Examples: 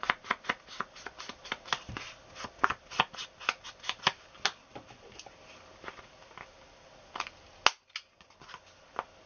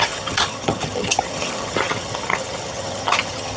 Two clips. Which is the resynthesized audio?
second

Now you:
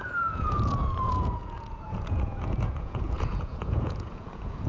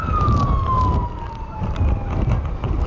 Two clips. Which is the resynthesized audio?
first